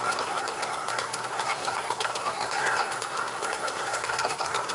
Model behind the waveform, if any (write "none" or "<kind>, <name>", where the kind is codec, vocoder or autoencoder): codec, SNAC